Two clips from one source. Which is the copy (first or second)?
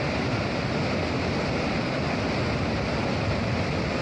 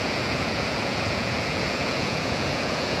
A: second